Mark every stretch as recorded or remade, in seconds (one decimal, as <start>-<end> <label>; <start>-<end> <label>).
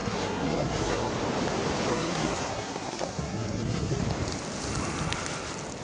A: 0.0-1.1 remade; 1.1-1.9 recorded; 1.9-4.0 remade; 4.0-5.8 recorded